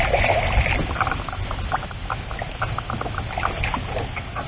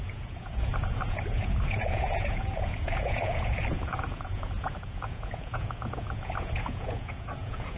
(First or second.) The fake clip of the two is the second